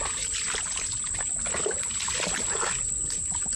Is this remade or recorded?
recorded